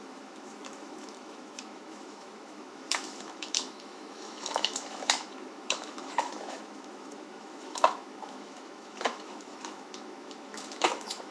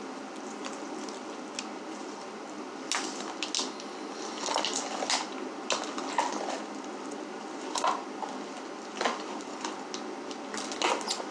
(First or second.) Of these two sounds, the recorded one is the second